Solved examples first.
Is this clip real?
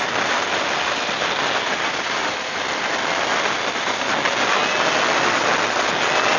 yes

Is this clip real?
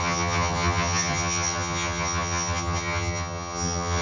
no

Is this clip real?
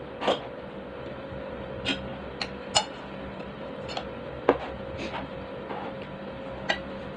yes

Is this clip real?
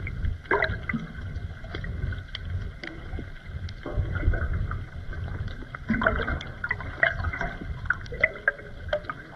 yes